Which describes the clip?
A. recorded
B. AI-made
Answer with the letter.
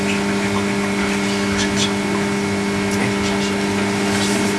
A